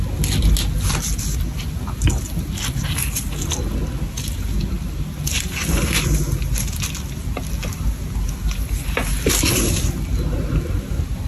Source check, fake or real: real